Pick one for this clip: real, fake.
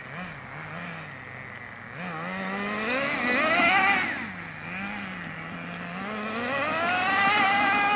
real